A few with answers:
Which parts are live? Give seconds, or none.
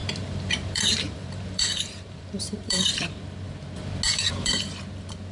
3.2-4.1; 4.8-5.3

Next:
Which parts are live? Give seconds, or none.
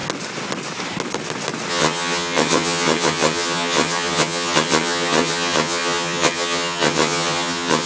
0.0-1.7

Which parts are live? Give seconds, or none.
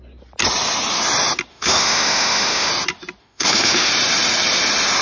0.0-1.5; 2.7-3.2; 3.9-5.0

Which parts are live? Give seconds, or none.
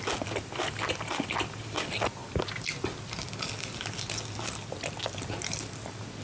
0.0-6.2